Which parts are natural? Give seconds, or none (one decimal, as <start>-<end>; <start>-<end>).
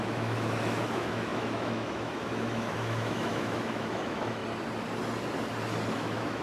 4.4-5.9